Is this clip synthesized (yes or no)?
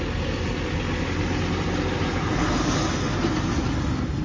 no